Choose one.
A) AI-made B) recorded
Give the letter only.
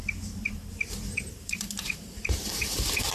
A